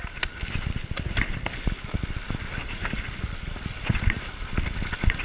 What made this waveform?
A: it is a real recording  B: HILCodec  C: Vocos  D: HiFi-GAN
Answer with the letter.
A